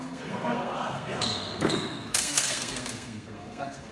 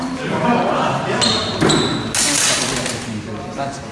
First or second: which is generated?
first